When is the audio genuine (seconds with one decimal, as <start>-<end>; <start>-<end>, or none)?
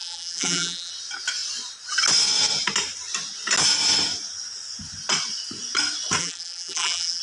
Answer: 0.9-6.2